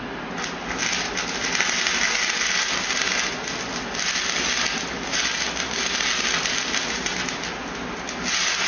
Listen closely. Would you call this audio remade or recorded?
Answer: recorded